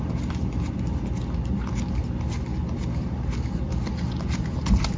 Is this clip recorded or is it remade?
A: recorded